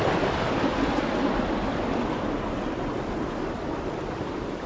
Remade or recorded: recorded